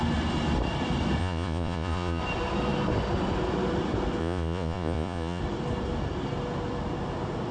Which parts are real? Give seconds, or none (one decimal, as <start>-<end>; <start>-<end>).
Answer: 0.0-1.2; 2.2-4.2; 5.4-7.5